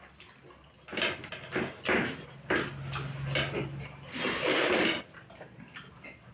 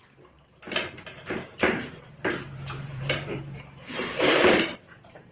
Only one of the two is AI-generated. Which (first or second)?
second